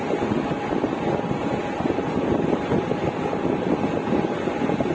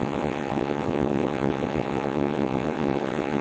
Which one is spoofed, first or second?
second